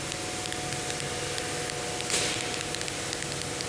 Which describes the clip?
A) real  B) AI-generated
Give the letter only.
A